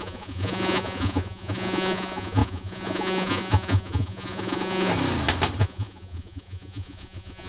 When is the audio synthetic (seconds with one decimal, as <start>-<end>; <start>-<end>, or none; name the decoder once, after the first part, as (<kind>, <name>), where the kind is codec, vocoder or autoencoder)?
0.0-4.9 (vocoder, Vocos); 5.6-7.5